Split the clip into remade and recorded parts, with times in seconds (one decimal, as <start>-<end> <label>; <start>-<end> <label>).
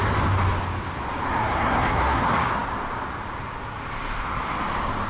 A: 0.0-1.3 recorded; 1.3-2.2 remade; 2.2-5.1 recorded